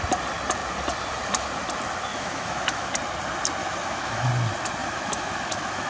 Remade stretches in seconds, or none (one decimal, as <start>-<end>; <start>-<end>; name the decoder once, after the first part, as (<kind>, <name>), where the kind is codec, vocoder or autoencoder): 2.1-2.9 (autoencoder, DAC-VAE); 3.6-4.3; 4.8-5.9